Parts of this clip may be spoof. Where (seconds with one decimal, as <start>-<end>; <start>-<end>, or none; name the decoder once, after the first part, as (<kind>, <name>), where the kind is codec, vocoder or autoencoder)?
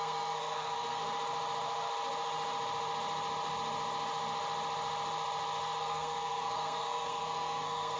0.0-1.0 (codec, SNAC); 5.8-8.0